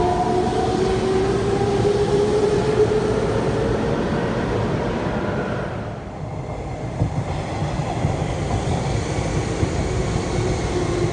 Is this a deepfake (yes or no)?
no